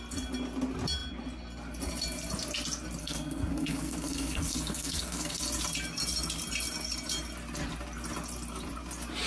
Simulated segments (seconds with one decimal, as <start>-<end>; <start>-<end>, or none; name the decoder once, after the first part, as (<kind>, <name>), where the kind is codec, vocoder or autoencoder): 3.0-5.4 (codec, SNAC)